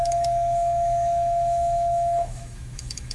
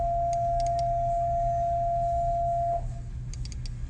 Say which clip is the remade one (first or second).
first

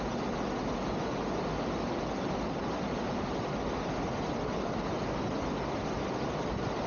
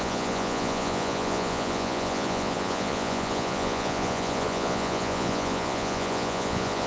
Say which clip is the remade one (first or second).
second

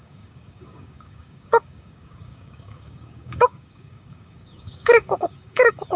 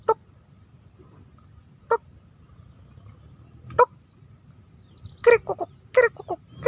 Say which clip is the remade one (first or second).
first